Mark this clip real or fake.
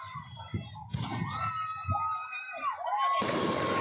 real